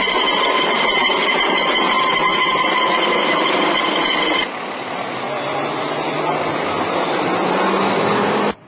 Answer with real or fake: real